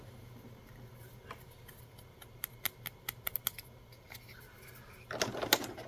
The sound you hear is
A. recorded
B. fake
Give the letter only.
A